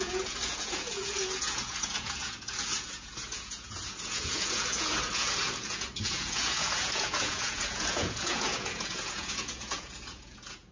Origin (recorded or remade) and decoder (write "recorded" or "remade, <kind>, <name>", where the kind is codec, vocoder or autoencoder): remade, vocoder, Vocos